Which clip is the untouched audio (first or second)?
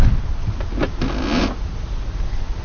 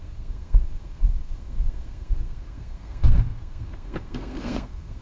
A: first